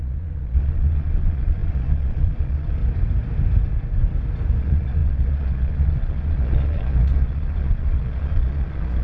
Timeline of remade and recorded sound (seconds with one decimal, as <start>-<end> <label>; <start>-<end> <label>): 0.0-2.8 remade; 2.8-4.6 recorded; 4.6-9.0 remade